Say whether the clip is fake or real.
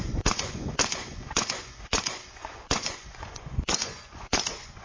fake